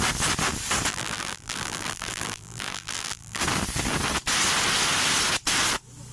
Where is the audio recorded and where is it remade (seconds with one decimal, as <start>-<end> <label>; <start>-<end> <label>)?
0.0-0.9 recorded; 0.9-3.4 remade; 3.4-6.1 recorded